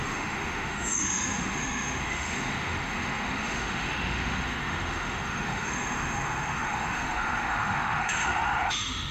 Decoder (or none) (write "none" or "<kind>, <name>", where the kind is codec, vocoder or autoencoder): autoencoder, DAC-VAE